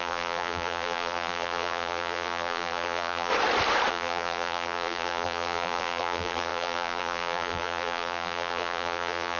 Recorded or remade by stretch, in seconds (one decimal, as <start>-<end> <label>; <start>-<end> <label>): 0.0-3.3 remade; 3.3-3.9 recorded; 3.9-9.4 remade